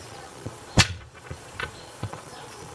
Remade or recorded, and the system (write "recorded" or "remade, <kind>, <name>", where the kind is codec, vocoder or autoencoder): remade, vocoder, Vocos